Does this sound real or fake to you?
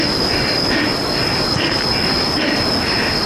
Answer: real